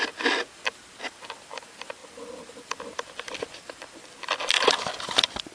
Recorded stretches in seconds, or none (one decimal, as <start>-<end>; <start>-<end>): 0.0-5.5